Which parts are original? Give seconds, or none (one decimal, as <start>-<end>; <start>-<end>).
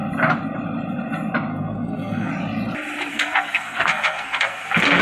0.0-1.5; 2.3-3.1